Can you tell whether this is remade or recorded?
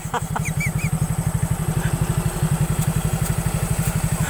recorded